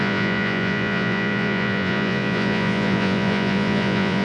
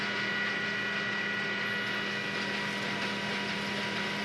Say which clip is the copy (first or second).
first